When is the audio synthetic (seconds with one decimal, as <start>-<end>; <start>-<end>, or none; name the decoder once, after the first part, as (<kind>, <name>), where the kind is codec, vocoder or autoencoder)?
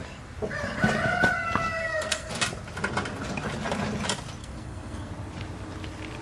1.8-2.3 (codec, SNAC); 4.4-5.1